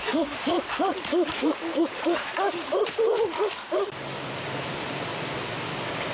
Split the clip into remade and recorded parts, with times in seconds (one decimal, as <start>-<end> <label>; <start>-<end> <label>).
0.0-2.3 remade; 2.3-4.3 recorded; 4.3-5.1 remade; 5.1-6.1 recorded